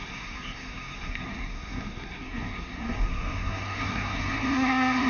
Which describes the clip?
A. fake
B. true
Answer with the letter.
A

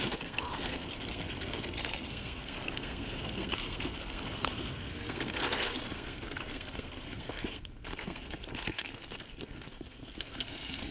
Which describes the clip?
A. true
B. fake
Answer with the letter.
B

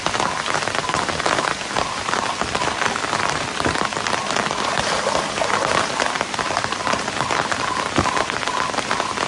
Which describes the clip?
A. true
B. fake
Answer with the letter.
B